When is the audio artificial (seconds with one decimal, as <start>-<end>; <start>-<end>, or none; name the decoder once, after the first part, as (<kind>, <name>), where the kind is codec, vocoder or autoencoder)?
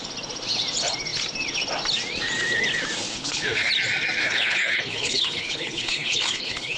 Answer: 3.1-3.7 (codec, HILCodec); 4.2-6.8